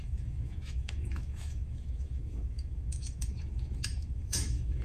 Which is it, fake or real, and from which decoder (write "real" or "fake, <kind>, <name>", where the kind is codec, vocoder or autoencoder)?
fake, autoencoder, DAC-VAE